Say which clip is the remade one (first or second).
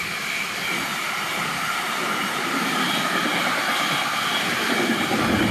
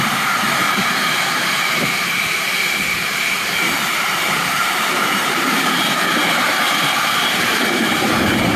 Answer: second